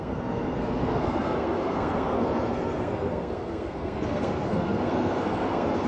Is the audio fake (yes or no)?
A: yes